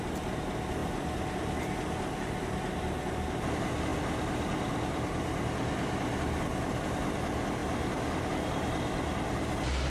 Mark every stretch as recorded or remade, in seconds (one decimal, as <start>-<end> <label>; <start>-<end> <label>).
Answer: 0.0-0.8 recorded; 0.8-3.5 remade; 3.5-7.6 recorded; 7.6-8.3 remade; 8.3-9.9 recorded